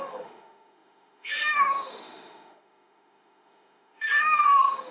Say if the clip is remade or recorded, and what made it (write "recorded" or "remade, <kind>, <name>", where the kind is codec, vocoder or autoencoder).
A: remade, autoencoder, DAC-VAE